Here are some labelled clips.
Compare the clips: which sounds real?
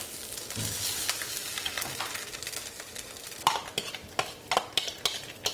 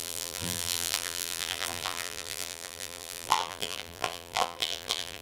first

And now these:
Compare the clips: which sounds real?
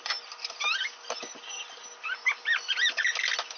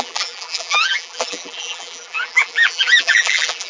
first